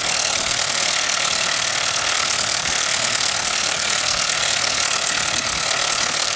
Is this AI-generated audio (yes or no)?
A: yes